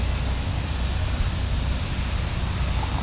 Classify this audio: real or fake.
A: real